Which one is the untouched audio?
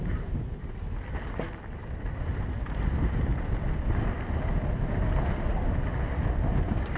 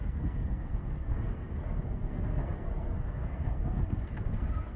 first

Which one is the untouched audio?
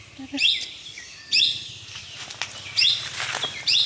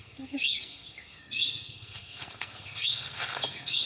first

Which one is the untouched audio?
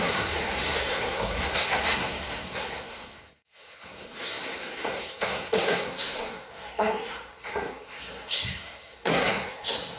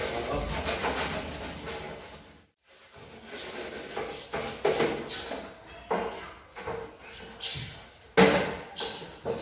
second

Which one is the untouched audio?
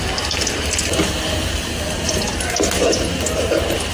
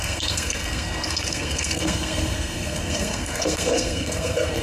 first